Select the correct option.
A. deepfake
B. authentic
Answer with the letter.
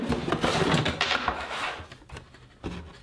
B